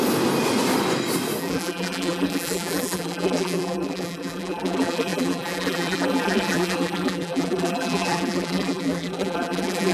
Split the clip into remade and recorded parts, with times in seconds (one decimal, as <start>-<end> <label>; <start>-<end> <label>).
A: 0.0-1.4 recorded; 1.4-9.9 remade